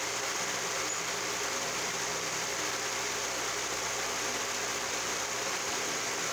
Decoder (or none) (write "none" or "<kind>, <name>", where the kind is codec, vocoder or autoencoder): none